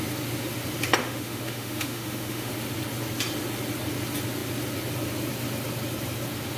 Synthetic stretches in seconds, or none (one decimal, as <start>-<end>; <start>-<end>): 1.0-2.5